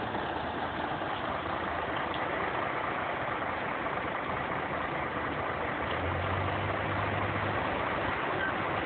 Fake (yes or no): no